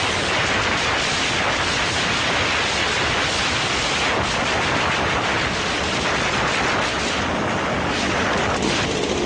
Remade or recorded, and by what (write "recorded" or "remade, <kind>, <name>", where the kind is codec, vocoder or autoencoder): recorded